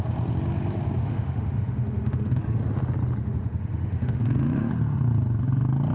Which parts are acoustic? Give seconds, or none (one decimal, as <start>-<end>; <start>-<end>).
0.0-1.0; 2.4-3.2; 4.7-5.9